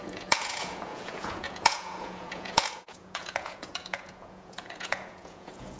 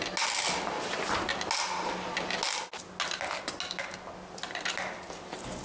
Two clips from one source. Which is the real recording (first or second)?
second